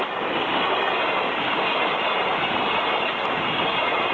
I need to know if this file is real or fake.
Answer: real